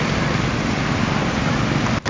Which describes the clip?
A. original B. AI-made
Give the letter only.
A